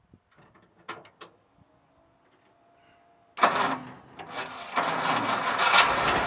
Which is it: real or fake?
real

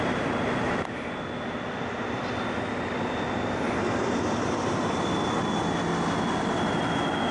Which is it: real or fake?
real